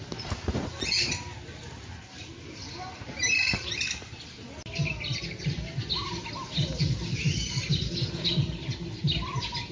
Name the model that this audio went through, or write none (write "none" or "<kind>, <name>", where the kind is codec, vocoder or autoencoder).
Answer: none